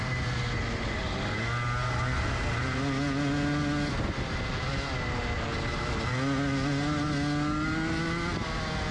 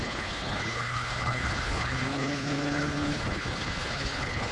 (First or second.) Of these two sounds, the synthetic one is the second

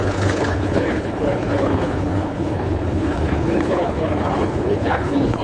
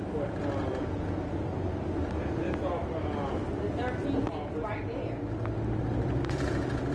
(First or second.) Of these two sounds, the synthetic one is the first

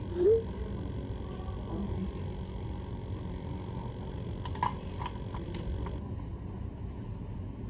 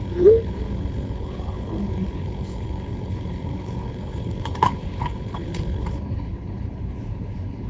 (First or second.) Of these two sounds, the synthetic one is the second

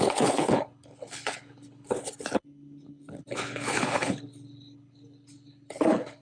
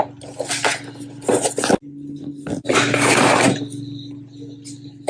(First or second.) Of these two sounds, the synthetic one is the first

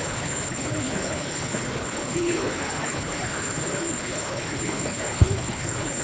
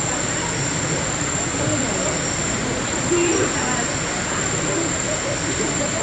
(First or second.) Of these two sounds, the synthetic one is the first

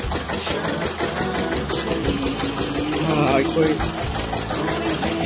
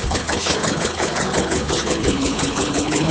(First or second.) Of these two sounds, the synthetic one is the second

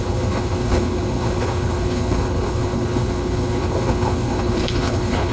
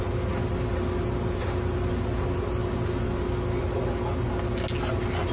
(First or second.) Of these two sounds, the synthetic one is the first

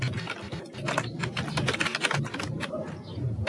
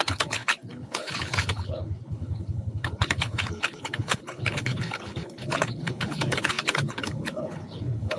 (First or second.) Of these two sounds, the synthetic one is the second